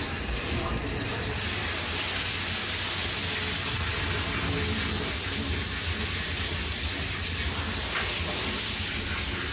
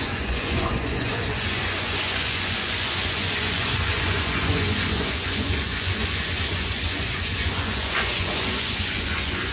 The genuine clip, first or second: first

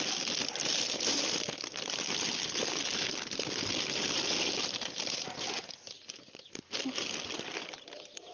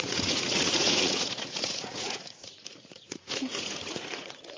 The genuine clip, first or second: first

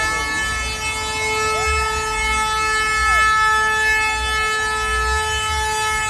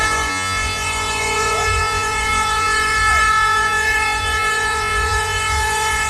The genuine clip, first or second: first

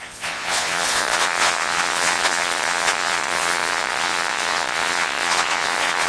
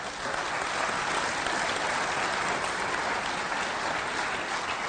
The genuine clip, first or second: second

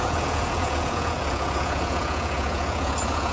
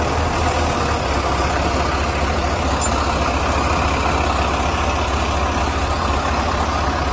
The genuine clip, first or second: second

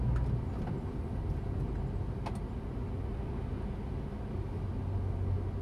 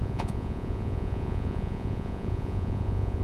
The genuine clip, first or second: first